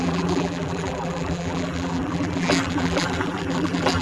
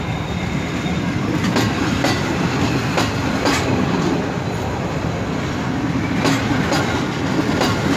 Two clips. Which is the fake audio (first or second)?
first